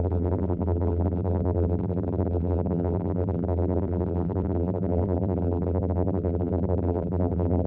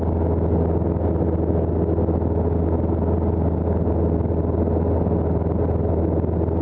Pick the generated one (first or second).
first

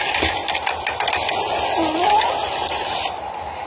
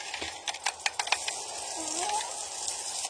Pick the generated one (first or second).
first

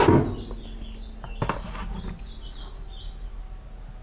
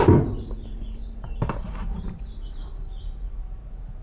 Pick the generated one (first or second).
second